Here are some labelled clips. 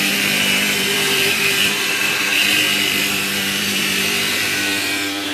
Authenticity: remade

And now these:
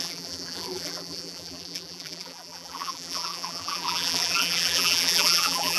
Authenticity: remade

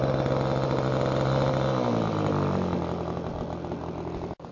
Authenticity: recorded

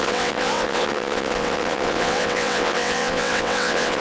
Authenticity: remade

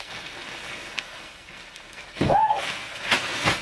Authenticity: remade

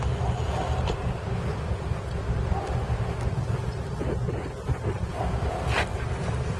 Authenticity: recorded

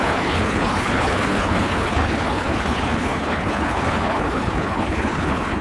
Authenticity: remade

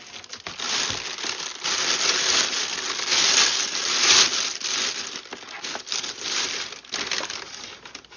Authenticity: recorded